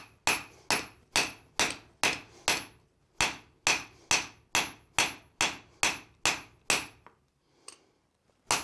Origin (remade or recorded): recorded